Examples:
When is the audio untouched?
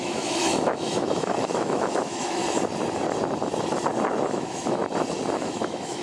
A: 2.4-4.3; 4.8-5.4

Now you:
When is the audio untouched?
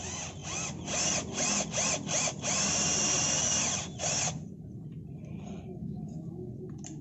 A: 0.0-5.8; 6.5-7.0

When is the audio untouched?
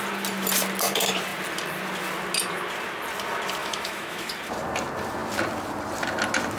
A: 0.0-3.6; 4.3-6.6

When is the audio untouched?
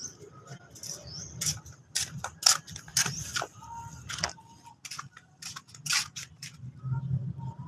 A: 0.0-7.7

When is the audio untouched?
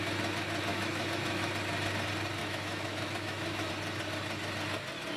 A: 0.0-0.7; 1.5-2.4; 3.7-5.2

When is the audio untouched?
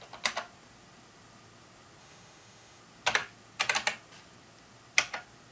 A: 0.0-2.0; 2.8-5.5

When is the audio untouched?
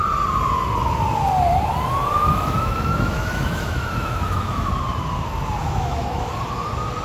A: 0.0-2.1; 4.7-5.6; 6.3-7.0